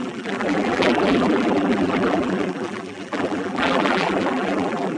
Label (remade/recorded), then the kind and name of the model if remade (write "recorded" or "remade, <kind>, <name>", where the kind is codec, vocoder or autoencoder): remade, vocoder, BigVGAN v2